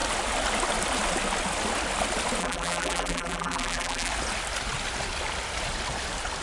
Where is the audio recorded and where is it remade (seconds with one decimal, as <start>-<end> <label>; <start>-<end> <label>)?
0.0-2.4 recorded; 2.4-4.1 remade; 4.1-6.4 recorded

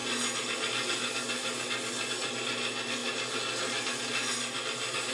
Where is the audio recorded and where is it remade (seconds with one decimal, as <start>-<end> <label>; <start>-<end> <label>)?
0.0-5.1 recorded

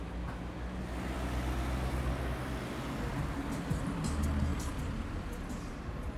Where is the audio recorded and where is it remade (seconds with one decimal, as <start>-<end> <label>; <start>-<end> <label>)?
0.0-3.1 recorded; 3.1-3.8 remade; 3.8-4.5 recorded; 4.5-5.7 remade; 5.7-6.2 recorded

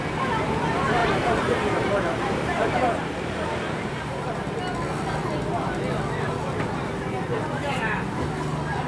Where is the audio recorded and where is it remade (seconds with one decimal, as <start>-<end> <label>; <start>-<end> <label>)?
0.0-1.0 recorded; 1.0-4.3 remade; 4.3-8.9 recorded

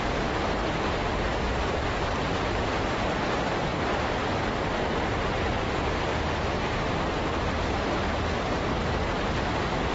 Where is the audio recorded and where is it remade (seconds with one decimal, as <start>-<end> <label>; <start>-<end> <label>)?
0.0-6.1 remade; 6.1-7.7 recorded; 7.7-9.9 remade

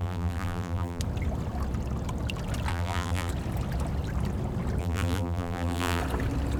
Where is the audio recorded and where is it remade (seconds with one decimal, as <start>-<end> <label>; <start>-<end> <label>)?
0.0-1.0 remade; 1.0-2.7 recorded; 2.7-3.3 remade; 3.3-4.8 recorded; 4.8-6.0 remade; 6.0-6.6 recorded

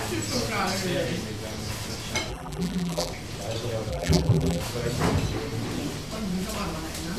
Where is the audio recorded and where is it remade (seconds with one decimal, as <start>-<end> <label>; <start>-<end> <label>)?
0.0-2.3 recorded; 2.3-3.1 remade; 3.1-3.9 recorded; 3.9-4.6 remade; 4.6-7.2 recorded

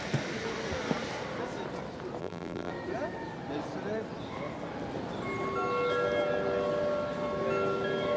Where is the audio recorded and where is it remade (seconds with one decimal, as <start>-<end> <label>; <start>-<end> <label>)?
0.0-2.2 recorded; 2.2-2.7 remade; 2.7-8.2 recorded